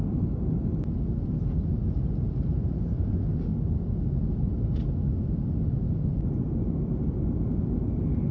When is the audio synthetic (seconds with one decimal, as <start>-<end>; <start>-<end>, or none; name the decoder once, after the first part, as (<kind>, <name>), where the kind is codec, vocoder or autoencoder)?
none